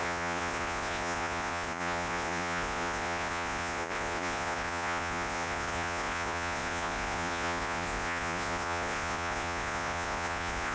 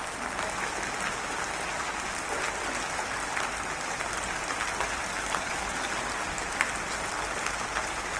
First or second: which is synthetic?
first